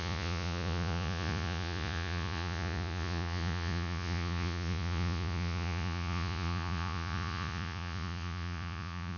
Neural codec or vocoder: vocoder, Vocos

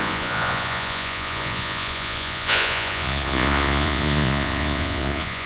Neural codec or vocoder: vocoder, Vocos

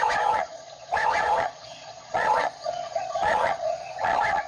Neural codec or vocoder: vocoder, Vocos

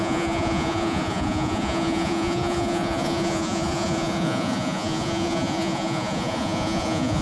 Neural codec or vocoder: vocoder, Vocos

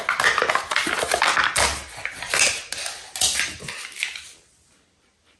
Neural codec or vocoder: none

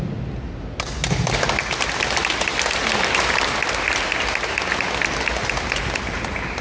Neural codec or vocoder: none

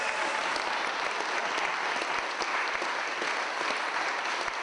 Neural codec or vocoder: none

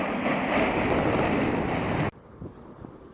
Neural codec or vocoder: none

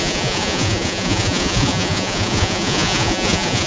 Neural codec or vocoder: vocoder, Vocos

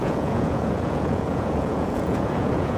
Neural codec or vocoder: vocoder, Vocos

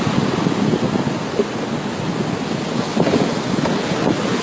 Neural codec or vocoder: none